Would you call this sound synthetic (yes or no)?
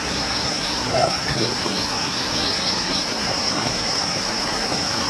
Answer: yes